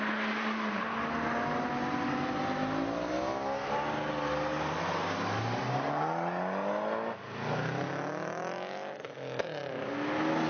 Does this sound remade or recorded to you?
recorded